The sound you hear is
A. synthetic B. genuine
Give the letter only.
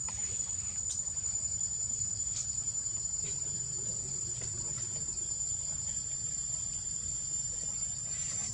A